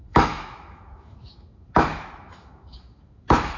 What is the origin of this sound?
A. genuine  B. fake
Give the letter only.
B